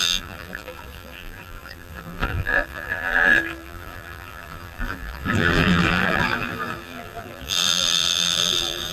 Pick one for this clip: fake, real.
fake